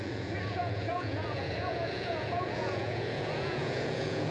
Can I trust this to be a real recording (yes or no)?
no